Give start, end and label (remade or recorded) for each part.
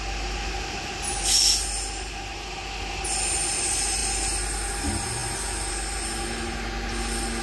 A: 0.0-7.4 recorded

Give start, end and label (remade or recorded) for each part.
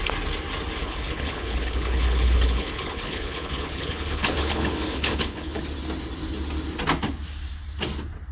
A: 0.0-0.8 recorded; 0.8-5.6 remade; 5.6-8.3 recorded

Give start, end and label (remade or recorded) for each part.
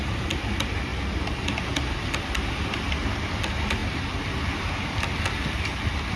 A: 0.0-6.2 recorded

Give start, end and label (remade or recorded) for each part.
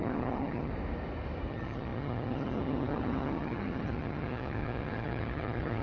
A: 0.0-0.7 remade; 0.7-1.5 recorded; 1.5-5.8 remade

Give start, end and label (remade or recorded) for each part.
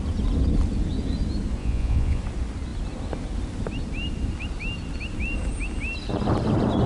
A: 0.0-1.6 recorded; 1.6-2.2 remade; 2.2-6.9 recorded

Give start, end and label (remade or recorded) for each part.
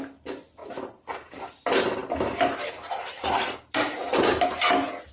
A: 0.0-2.0 recorded; 2.0-5.1 remade